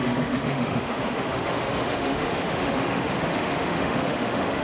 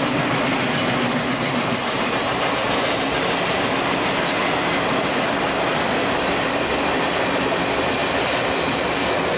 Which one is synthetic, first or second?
first